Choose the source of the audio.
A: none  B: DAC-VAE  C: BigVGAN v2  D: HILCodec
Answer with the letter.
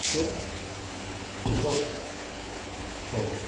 D